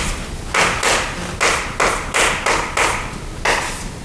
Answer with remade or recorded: recorded